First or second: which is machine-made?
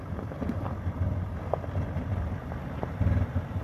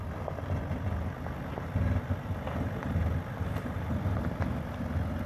first